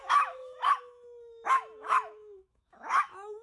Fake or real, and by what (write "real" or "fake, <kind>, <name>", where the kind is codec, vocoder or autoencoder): fake, autoencoder, DAC-VAE